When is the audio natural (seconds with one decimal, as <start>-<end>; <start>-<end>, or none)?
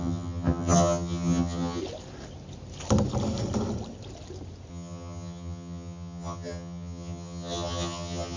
1.8-4.7